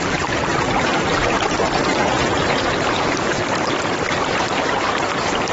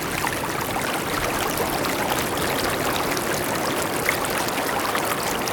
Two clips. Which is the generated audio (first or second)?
first